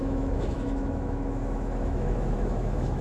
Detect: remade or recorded remade